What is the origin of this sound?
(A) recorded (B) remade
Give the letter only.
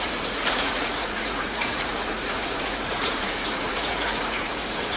B